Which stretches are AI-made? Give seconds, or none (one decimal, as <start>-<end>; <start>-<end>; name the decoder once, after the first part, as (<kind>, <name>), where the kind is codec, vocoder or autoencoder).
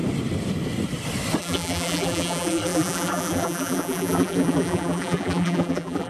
1.4-6.1 (vocoder, BigVGAN v2)